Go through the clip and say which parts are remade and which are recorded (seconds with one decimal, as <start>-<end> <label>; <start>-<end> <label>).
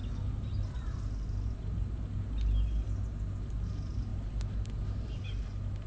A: 0.0-5.9 recorded